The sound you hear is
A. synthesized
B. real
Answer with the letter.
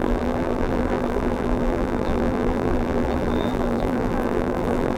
A